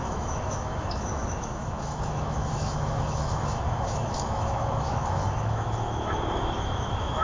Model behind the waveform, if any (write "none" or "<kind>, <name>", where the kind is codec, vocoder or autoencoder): autoencoder, DAC-VAE